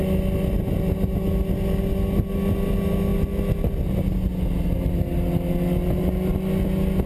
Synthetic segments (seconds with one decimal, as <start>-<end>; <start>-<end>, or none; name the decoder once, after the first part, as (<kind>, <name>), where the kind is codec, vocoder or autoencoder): none

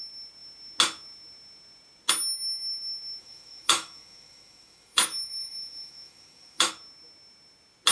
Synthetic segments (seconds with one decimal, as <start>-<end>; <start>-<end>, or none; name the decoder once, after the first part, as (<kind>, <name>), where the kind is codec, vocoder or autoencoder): 3.2-6.7 (autoencoder, DAC-VAE)

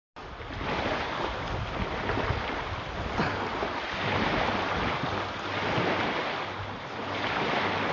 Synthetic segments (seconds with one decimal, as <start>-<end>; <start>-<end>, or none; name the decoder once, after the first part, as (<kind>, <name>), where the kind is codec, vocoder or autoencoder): none